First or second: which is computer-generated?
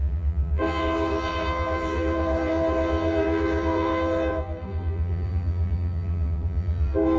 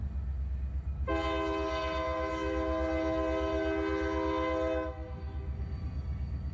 first